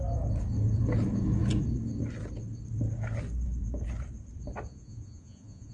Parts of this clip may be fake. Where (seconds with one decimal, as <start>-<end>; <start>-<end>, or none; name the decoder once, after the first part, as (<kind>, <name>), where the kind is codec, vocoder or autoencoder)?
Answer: 4.7-5.7 (vocoder, Vocos)